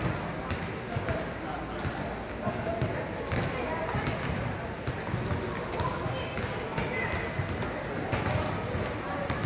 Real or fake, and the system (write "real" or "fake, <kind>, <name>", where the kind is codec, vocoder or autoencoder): real